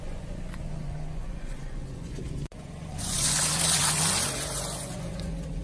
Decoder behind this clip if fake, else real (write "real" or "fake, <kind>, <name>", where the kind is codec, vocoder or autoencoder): fake, vocoder, Vocos